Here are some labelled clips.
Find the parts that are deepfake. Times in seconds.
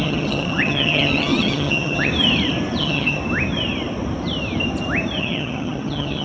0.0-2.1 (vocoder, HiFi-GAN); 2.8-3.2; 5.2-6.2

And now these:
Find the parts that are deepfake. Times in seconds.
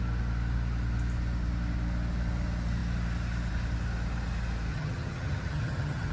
4.7-6.1 (vocoder, HiFi-GAN)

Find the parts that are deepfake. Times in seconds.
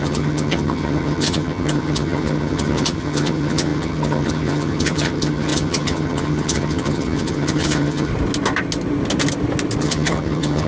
0.0-8.1 (vocoder, HiFi-GAN); 9.8-10.7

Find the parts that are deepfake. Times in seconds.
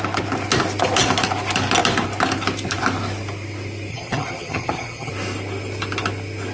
3.9-5.1 (vocoder, HiFi-GAN)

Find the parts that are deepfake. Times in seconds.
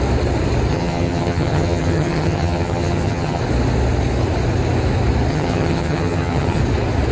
0.7-3.4 (vocoder, HiFi-GAN); 5.3-6.6